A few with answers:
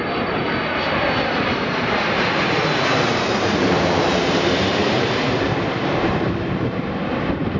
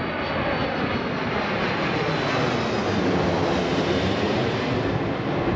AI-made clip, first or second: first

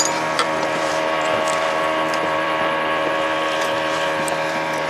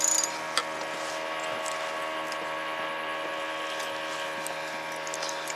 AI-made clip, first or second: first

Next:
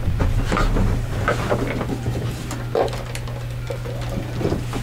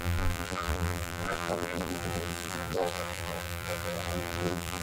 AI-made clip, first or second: second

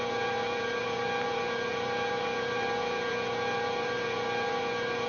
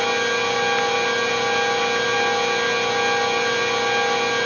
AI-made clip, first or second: first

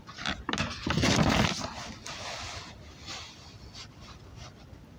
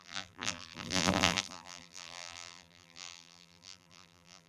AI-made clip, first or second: second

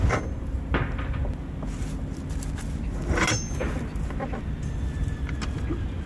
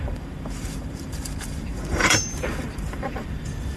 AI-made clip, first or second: second